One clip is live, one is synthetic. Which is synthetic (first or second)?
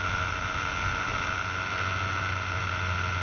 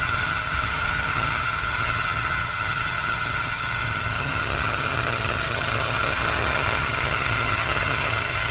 second